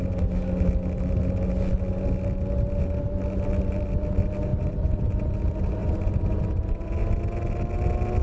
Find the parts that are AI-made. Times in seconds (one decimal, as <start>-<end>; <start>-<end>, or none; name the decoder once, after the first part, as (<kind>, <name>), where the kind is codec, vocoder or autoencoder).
4.5-5.3 (vocoder, BigVGAN v2); 5.8-6.4